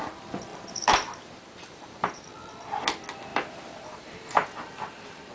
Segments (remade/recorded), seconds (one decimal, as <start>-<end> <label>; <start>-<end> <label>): 0.0-0.5 recorded; 0.5-2.3 remade; 2.3-3.3 recorded; 3.3-4.7 remade; 4.7-5.3 recorded